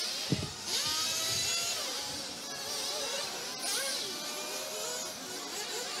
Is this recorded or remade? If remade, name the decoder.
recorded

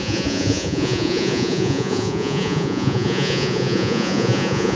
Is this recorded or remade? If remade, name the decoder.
remade, vocoder, Vocos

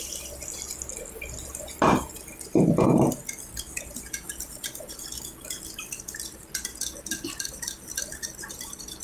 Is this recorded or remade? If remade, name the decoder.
recorded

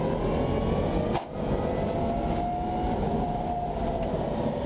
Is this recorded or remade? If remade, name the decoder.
recorded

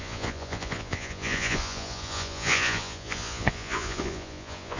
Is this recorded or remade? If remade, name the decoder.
remade, vocoder, Vocos